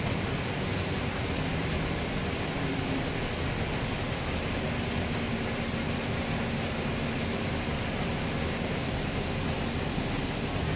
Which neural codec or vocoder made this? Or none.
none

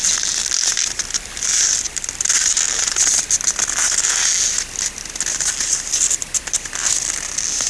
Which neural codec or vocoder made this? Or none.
none